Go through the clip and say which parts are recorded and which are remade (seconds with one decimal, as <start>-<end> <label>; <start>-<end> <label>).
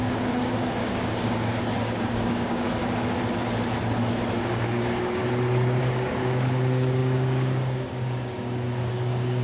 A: 0.0-2.8 remade; 2.8-4.4 recorded; 4.4-5.2 remade; 5.2-5.8 recorded; 5.8-9.4 remade